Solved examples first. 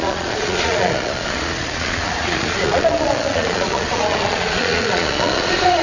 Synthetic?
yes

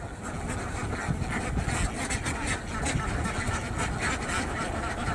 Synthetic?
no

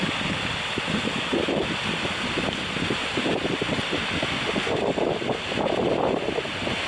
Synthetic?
no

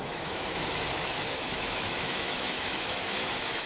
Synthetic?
yes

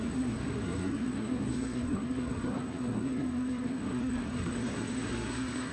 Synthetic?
yes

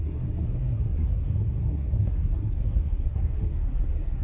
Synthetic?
yes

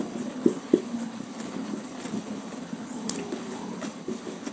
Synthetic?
yes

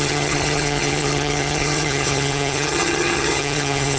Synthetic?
yes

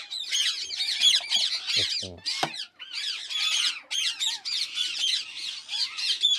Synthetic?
no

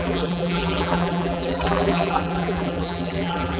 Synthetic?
yes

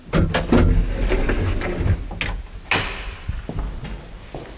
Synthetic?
no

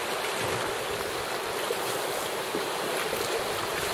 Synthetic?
no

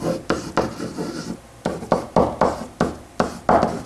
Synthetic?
no